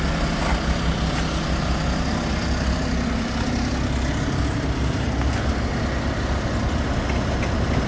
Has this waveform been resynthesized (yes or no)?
no